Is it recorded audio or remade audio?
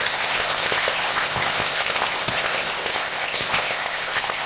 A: remade